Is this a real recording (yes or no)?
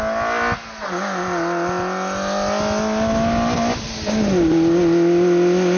yes